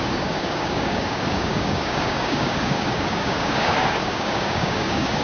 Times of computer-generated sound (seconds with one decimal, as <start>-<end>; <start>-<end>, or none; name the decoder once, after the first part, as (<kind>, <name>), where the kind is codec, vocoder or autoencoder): 0.0-5.2 (codec, DAC)